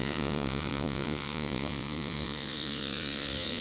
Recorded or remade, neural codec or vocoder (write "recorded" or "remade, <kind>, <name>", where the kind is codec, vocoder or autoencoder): remade, vocoder, WaveNeXt